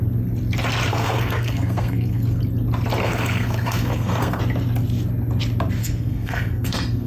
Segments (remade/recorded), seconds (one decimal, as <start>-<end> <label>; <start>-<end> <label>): 0.0-0.9 recorded; 0.9-2.4 remade; 2.4-3.0 recorded; 3.0-4.4 remade; 4.4-5.8 recorded; 5.8-7.1 remade